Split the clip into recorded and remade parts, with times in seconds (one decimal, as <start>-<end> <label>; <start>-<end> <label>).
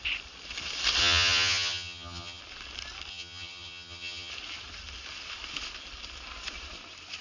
0.0-1.0 recorded; 1.0-2.4 remade; 2.4-3.1 recorded; 3.1-4.3 remade; 4.3-7.2 recorded